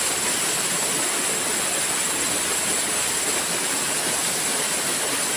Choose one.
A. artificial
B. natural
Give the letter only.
B